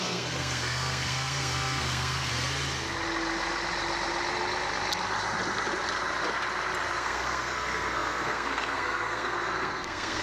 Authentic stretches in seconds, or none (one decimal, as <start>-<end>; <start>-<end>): 2.3-7.0